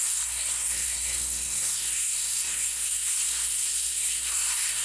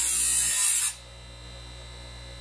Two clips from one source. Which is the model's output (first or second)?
first